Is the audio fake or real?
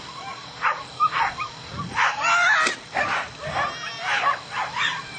real